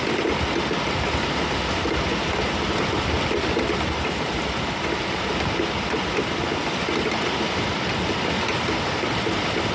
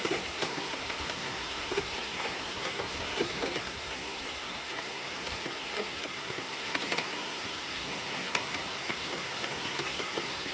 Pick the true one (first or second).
first